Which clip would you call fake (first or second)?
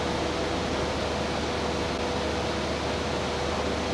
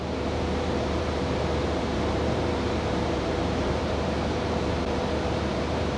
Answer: second